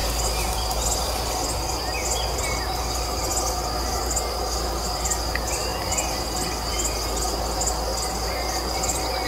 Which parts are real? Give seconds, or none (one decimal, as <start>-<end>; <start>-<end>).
0.0-9.3